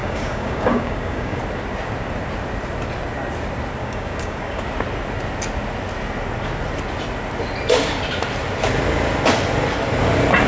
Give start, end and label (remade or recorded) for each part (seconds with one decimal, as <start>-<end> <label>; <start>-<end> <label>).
0.0-1.4 remade; 1.4-3.8 recorded; 3.8-4.6 remade; 4.6-10.5 recorded